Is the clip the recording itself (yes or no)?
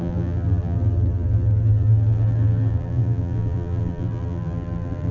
no